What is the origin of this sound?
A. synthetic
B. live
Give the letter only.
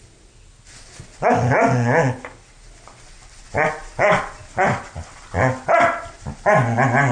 B